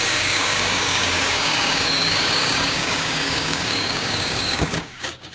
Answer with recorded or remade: remade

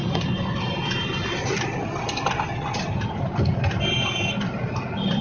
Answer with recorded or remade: recorded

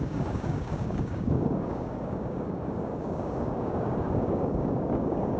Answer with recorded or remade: remade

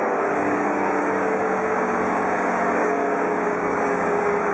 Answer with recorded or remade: remade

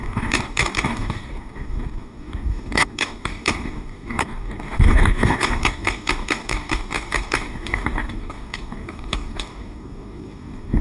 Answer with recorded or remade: remade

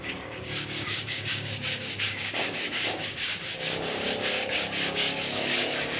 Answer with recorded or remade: remade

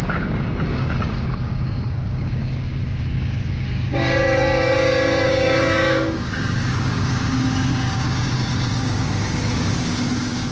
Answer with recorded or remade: remade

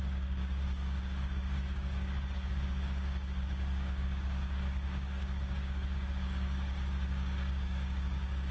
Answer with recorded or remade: remade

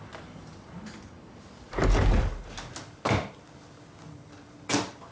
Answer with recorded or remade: recorded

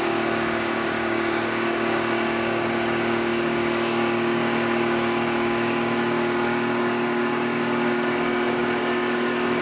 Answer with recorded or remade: remade